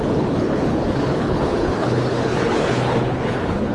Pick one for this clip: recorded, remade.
remade